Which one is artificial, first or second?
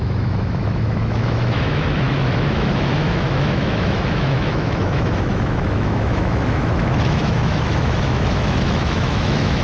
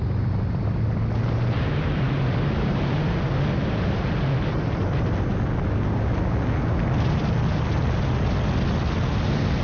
first